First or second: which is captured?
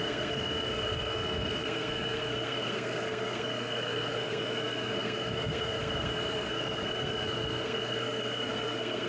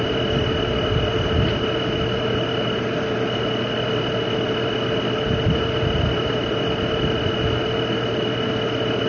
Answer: second